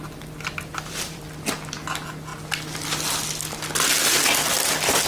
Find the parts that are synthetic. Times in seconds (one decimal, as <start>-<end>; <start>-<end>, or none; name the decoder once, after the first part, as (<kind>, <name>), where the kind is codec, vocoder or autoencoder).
0.7-1.2 (vocoder, BigVGAN v2)